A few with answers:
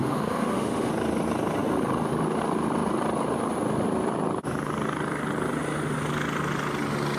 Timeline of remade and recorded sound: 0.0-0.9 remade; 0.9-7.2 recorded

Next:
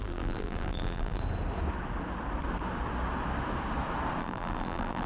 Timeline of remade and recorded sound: 0.0-1.2 remade; 1.2-4.2 recorded; 4.2-5.1 remade

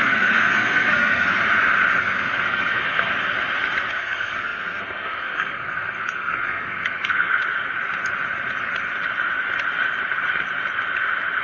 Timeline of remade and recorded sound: 0.0-1.4 remade; 1.4-2.0 recorded; 2.0-3.1 remade; 3.1-3.9 recorded; 3.9-7.3 remade; 7.3-11.4 recorded